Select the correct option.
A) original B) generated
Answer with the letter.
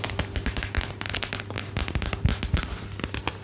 A